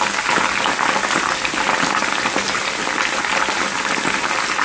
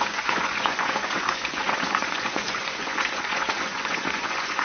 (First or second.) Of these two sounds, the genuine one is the first